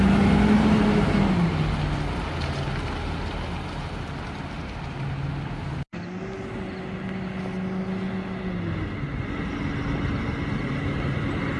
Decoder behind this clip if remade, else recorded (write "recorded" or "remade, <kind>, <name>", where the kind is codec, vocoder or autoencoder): recorded